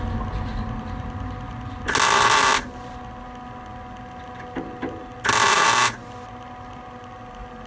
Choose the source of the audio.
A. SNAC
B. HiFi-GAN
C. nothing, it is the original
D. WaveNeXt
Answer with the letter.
C